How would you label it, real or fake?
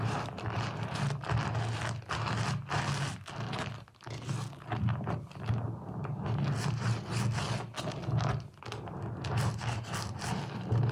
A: real